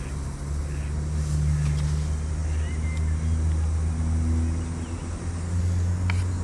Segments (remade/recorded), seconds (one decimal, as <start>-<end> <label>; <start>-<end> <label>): 0.0-6.4 recorded